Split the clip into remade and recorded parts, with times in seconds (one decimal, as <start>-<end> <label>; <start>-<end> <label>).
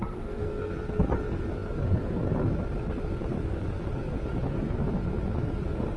0.0-0.5 remade; 0.5-6.0 recorded